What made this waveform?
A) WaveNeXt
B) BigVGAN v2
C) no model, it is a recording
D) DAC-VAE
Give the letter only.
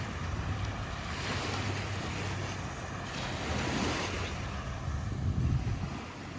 C